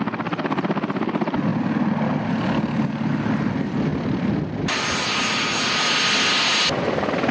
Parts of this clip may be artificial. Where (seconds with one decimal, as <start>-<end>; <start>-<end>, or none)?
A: none